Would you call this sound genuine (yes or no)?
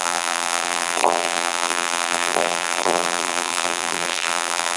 no